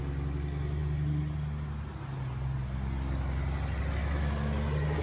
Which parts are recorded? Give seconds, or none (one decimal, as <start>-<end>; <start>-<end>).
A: 0.0-5.0